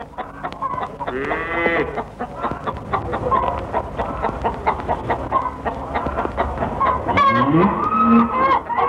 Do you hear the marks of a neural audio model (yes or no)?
no